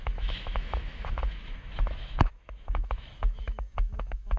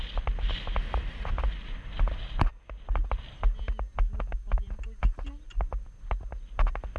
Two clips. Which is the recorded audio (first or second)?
second